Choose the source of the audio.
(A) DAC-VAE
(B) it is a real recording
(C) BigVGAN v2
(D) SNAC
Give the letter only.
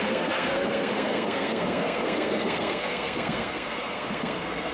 D